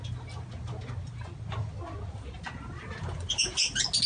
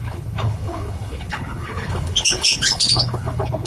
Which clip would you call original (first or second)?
first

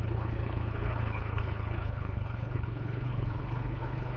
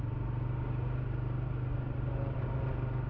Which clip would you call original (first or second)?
second